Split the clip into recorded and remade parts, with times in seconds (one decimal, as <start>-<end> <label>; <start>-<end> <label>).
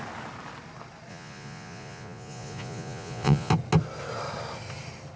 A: 0.0-1.1 recorded; 1.1-3.5 remade; 3.5-5.2 recorded